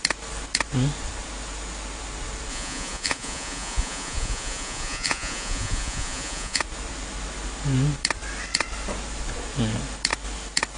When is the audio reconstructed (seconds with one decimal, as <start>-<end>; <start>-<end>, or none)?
2.5-6.6